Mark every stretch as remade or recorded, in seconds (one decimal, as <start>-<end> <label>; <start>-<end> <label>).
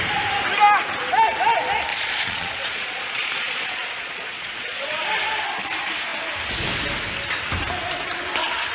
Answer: 0.0-1.9 recorded; 1.9-5.0 remade; 5.0-8.7 recorded